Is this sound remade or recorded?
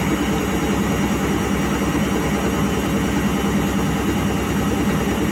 recorded